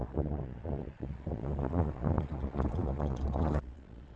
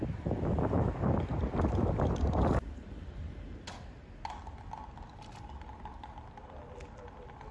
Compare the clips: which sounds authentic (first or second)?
second